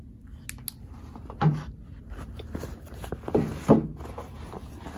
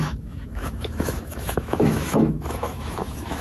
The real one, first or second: first